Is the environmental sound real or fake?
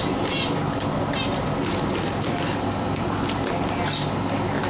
real